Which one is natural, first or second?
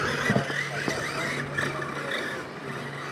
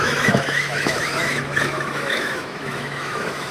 first